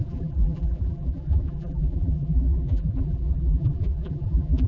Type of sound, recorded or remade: remade